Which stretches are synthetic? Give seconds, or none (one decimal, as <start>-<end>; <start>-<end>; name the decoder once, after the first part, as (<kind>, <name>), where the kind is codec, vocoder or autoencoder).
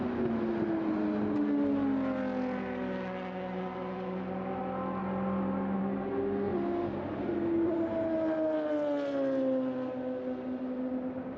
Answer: none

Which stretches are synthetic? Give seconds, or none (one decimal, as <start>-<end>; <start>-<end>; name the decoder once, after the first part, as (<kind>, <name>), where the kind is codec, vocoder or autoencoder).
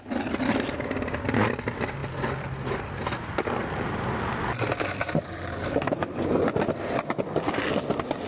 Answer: none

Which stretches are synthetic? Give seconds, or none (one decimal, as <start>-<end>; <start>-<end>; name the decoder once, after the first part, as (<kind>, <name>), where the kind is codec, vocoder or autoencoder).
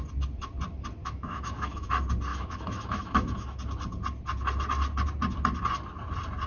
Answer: 1.0-1.9 (autoencoder, DAC-VAE); 2.3-3.6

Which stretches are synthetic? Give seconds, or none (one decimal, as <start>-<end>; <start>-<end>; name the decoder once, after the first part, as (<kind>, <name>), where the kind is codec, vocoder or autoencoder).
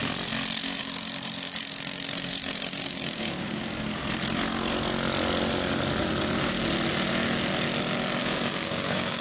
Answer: 0.8-3.6 (codec, DAC); 8.2-9.2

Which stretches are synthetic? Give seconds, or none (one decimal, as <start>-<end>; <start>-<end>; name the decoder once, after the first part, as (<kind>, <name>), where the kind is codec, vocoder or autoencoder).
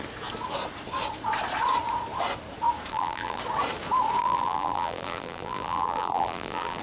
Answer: 2.9-3.4 (vocoder, BigVGAN v2); 4.2-6.8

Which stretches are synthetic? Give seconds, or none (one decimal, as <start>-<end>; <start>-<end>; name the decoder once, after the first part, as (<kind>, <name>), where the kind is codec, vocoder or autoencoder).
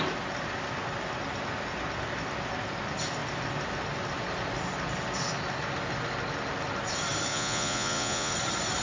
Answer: 7.3-8.3 (vocoder, Vocos)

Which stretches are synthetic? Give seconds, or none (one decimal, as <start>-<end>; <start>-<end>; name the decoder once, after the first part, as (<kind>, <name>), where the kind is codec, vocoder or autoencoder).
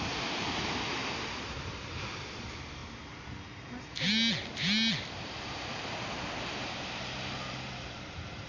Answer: 0.0-1.0 (vocoder, BigVGAN v2); 1.6-2.8; 6.4-8.5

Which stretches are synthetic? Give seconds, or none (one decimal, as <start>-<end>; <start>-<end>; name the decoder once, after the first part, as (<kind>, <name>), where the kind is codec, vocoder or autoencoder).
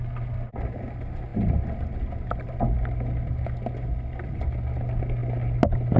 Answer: none